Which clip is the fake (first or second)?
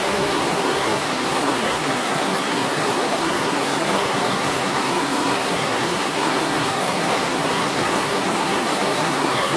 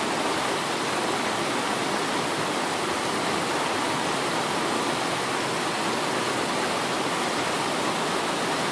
first